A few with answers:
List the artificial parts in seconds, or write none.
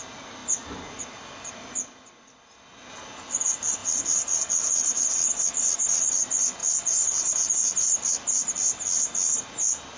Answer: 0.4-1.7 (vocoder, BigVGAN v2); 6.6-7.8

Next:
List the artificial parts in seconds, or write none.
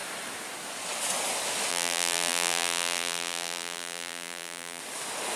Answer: 1.7-4.8 (vocoder, BigVGAN v2)